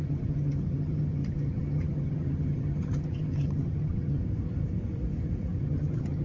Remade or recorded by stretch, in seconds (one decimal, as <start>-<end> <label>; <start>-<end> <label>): 0.0-4.2 remade; 4.2-5.6 recorded; 5.6-6.2 remade